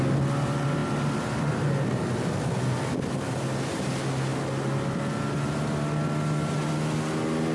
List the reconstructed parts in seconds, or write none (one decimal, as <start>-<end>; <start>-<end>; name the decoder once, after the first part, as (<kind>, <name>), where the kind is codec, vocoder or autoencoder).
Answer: none